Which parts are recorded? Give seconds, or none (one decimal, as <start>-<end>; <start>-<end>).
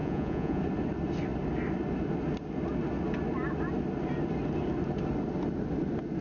0.6-6.2